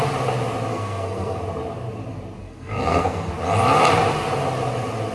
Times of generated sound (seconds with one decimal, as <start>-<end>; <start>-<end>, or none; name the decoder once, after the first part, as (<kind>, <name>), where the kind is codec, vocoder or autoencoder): 0.7-1.4 (codec, SNAC); 2.4-3.3